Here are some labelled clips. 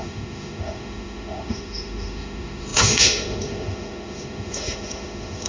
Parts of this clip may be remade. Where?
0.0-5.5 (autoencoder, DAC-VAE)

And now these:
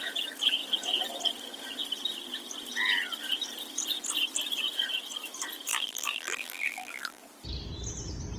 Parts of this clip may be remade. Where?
5.7-7.2 (vocoder, BigVGAN v2)

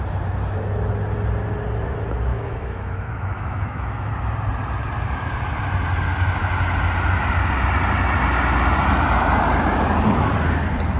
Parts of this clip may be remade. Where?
2.3-4.1 (autoencoder, DAC-VAE)

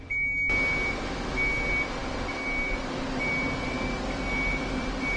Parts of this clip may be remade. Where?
none

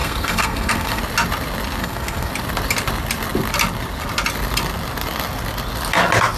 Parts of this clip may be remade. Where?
0.0-1.0 (codec, SNAC); 1.8-2.3

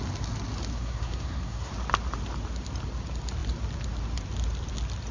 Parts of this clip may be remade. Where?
0.7-1.7 (codec, SNAC)

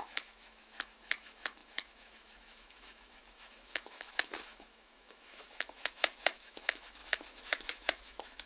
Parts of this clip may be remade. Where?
0.0-8.5 (autoencoder, DAC-VAE)

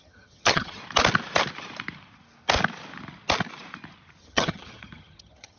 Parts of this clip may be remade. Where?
0.0-0.8 (vocoder, HiFi-GAN); 4.2-5.6